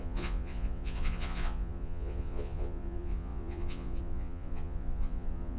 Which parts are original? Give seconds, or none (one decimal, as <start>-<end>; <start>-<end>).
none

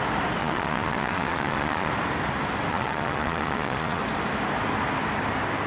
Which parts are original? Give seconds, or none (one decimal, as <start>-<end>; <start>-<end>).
0.0-0.4; 1.9-2.7; 4.0-5.7

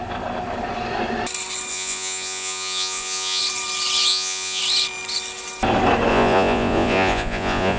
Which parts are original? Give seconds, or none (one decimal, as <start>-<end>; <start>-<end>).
0.0-1.7; 3.4-4.1; 4.6-6.1